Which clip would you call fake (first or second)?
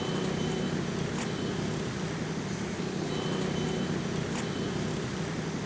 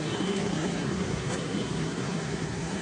second